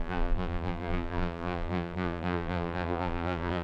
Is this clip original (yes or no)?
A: no